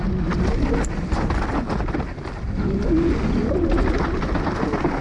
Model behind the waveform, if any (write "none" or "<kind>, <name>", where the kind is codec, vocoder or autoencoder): none